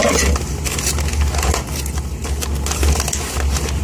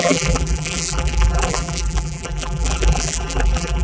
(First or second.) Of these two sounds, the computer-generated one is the second